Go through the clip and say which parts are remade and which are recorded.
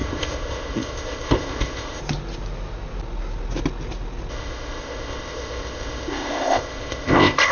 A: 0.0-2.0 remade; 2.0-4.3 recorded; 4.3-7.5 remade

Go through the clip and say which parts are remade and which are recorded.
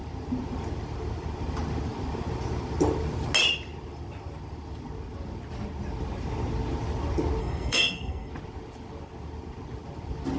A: 0.0-7.4 recorded; 7.4-8.3 remade; 8.3-10.4 recorded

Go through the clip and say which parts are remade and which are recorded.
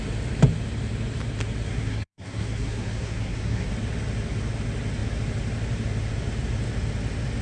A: 0.0-1.7 recorded; 1.7-3.7 remade; 3.7-7.4 recorded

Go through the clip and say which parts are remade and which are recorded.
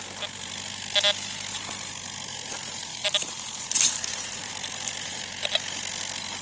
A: 0.0-2.9 recorded; 2.9-4.5 remade; 4.5-6.4 recorded